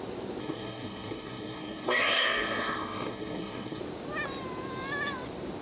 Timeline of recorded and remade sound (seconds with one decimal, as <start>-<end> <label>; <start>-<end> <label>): 0.0-0.4 recorded; 0.4-3.8 remade; 3.8-5.6 recorded